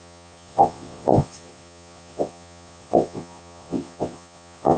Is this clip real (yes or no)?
no